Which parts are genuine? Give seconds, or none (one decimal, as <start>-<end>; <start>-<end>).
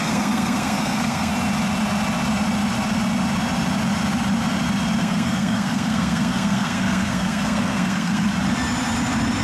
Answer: 1.3-5.0; 8.3-9.4